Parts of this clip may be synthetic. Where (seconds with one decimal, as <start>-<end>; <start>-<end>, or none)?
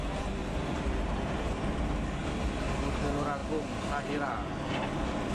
0.4-1.6